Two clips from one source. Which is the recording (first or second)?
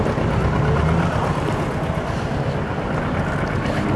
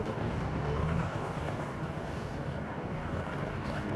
first